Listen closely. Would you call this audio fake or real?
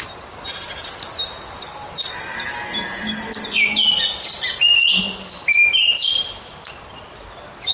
real